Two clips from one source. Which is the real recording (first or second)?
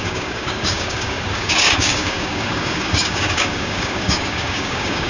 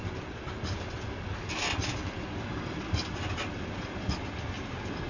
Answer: second